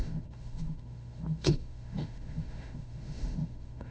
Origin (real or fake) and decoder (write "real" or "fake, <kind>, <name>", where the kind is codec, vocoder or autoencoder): fake, autoencoder, DAC-VAE